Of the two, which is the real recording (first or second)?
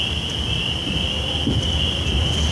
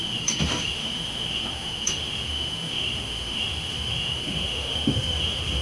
first